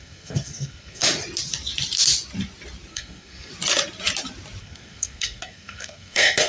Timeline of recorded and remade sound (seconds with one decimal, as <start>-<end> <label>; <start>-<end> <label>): 0.0-1.0 remade; 1.0-2.9 recorded; 2.9-3.5 remade; 3.5-4.6 recorded; 4.6-6.5 remade

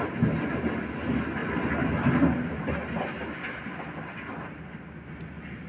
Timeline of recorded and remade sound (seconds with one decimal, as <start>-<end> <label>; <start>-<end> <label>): 0.0-5.7 recorded

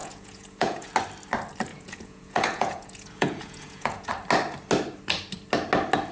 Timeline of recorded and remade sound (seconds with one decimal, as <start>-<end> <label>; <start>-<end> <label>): 0.0-0.9 remade; 0.9-1.7 recorded; 1.7-4.1 remade; 4.1-6.1 recorded

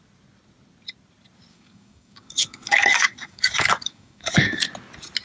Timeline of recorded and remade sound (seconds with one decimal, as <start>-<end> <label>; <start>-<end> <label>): 0.0-1.5 recorded; 1.5-4.6 remade; 4.6-5.2 recorded

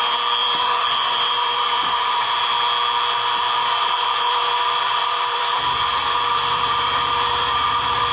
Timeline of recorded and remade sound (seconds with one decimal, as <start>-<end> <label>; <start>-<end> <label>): 0.0-0.4 recorded; 0.4-2.3 remade; 2.3-3.6 recorded; 3.6-8.1 remade

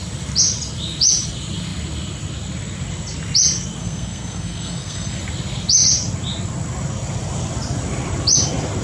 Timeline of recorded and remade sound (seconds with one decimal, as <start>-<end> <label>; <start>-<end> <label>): 0.0-3.8 recorded; 3.8-5.2 remade; 5.2-8.8 recorded